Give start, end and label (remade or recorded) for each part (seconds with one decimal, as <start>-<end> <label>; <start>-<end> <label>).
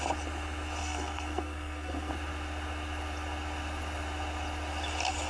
0.0-0.8 recorded; 0.8-2.1 remade; 2.1-5.3 recorded